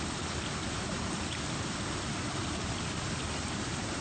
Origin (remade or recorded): recorded